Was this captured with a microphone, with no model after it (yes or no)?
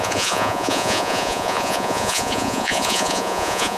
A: no